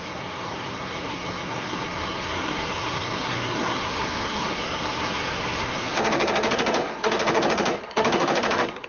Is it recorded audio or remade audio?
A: remade